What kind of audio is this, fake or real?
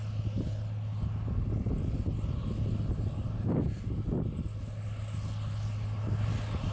real